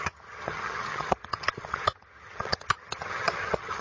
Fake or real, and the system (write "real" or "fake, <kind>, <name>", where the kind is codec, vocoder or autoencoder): fake, vocoder, HiFi-GAN